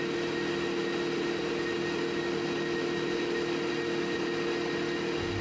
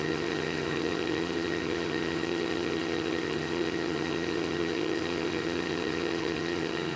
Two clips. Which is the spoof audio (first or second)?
second